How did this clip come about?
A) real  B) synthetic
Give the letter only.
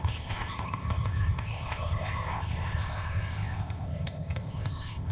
B